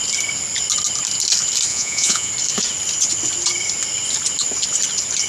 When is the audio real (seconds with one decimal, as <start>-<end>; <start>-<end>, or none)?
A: 0.0-1.7; 2.3-5.3